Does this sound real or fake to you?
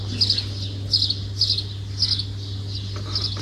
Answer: real